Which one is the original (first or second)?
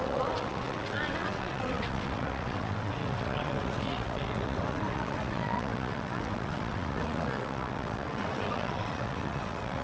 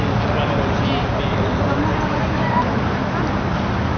second